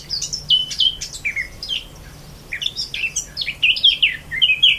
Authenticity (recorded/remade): recorded